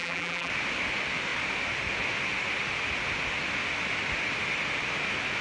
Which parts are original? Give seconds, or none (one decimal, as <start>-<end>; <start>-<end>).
0.5-5.4